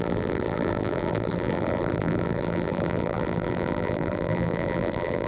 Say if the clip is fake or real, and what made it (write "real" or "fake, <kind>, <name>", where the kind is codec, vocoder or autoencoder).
fake, vocoder, BigVGAN v2